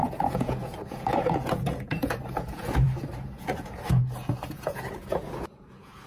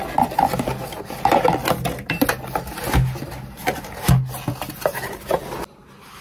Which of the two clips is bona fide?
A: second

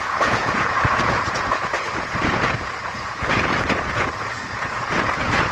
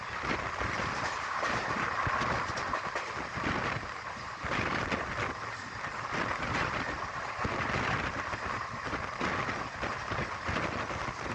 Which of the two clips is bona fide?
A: second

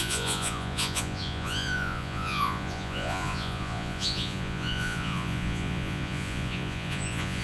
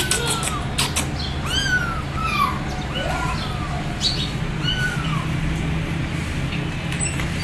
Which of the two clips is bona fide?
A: second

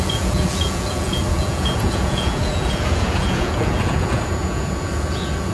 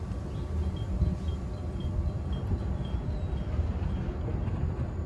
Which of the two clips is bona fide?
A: second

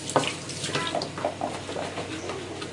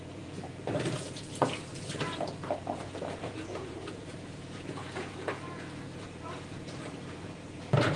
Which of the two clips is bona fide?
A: first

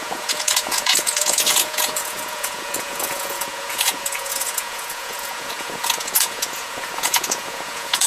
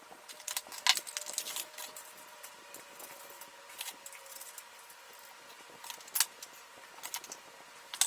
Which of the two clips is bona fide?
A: second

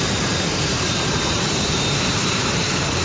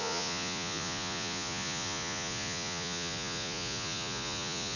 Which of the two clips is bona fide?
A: first